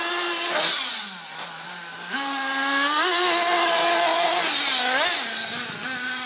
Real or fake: real